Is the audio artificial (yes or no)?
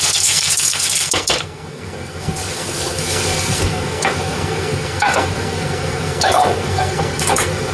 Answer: yes